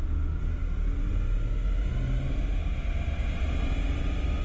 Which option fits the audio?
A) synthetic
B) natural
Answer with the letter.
B